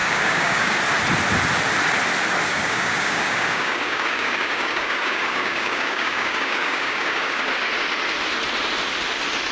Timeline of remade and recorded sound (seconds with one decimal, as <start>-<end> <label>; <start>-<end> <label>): 0.0-0.8 remade; 0.8-2.5 recorded; 2.5-7.4 remade; 7.4-9.5 recorded